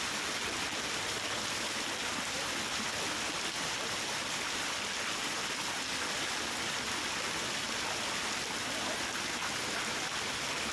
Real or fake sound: real